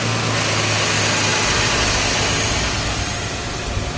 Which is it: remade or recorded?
recorded